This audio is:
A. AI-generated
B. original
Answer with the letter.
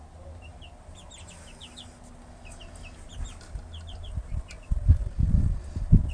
B